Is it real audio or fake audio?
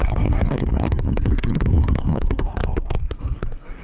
fake